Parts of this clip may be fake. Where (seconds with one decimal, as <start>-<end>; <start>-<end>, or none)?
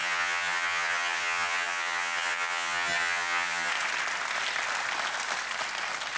0.0-3.7